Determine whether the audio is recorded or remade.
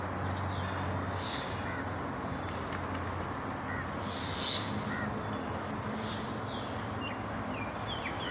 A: recorded